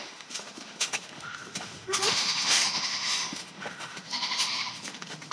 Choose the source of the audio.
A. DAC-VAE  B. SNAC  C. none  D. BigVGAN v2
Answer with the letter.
A